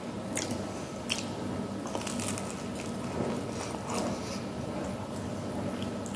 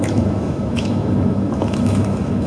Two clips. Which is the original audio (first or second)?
first